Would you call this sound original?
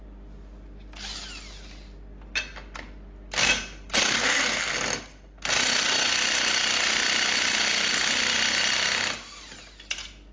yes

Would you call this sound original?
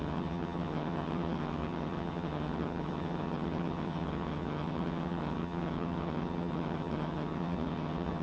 no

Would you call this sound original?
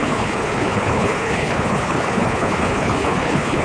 no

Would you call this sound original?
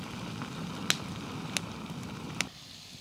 yes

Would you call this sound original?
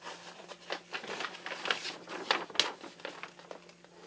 yes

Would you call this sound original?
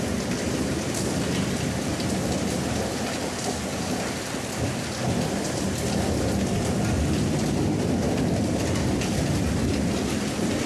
yes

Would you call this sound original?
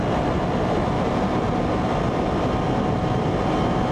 yes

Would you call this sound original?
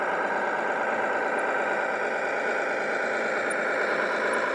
no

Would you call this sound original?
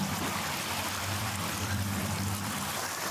no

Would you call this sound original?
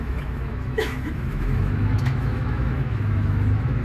no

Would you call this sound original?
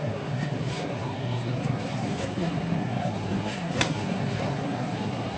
no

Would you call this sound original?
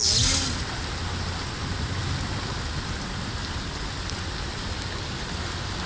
yes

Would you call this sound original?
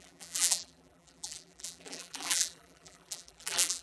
no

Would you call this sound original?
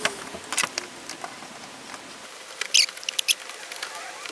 yes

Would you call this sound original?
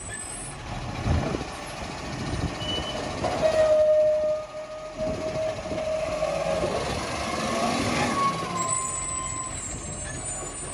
yes